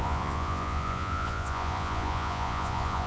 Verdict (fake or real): fake